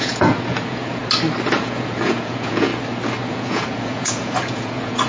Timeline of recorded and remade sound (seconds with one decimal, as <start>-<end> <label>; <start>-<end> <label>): 0.0-1.0 remade; 1.0-1.6 recorded; 1.6-2.7 remade; 2.7-3.3 recorded; 3.3-5.1 remade